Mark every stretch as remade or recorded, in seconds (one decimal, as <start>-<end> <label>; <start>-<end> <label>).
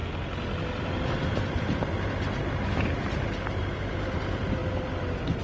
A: 0.0-5.4 recorded